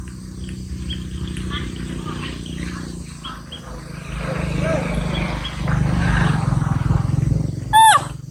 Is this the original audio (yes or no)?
yes